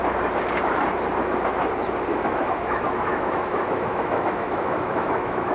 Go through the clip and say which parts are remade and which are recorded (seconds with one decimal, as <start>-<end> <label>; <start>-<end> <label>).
0.0-2.1 recorded; 2.1-5.5 remade